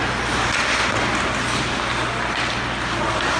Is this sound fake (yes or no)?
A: no